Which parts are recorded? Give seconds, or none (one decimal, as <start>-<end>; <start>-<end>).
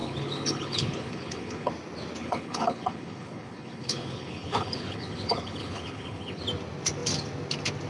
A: 1.7-2.2; 6.4-7.9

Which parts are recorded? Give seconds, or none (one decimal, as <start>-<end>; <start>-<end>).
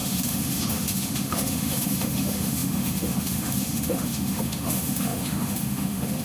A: none